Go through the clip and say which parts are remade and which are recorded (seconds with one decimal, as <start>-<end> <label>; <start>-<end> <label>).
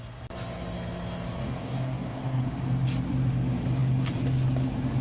0.0-1.4 recorded; 1.4-2.4 remade; 2.4-5.0 recorded